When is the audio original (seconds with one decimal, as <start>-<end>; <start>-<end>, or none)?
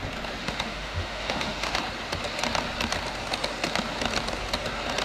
0.0-0.4; 1.8-5.0